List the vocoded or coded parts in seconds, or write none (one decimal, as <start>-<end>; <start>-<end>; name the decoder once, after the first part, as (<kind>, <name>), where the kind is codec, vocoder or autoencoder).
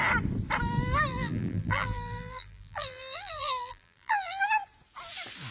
1.1-4.4 (vocoder, BigVGAN v2)